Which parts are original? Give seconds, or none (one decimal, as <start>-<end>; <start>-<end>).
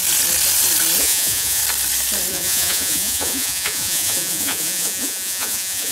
0.0-1.0; 1.6-2.3